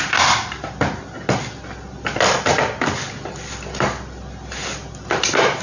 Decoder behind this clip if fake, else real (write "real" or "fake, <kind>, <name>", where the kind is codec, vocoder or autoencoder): real